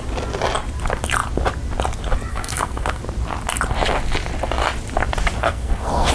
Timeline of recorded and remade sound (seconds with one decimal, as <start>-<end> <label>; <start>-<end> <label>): 0.0-2.3 recorded; 2.3-3.0 remade; 3.0-5.4 recorded; 5.4-6.1 remade